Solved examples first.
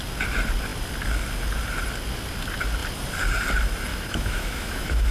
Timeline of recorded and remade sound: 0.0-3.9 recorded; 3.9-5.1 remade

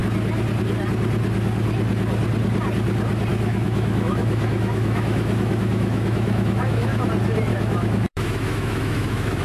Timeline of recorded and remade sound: 0.0-3.3 recorded; 3.3-7.1 remade; 7.1-7.5 recorded; 7.5-9.4 remade